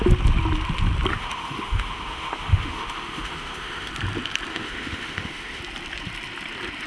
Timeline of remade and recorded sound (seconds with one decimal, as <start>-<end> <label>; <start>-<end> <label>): 0.0-1.1 recorded; 1.1-3.9 remade; 3.9-4.5 recorded; 4.5-5.6 remade; 5.6-6.9 recorded